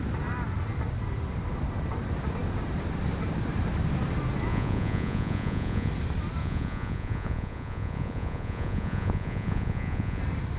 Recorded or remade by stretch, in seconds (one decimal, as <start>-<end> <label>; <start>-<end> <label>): 0.0-4.5 recorded; 4.5-5.9 remade; 5.9-6.4 recorded; 6.4-10.2 remade; 10.2-10.6 recorded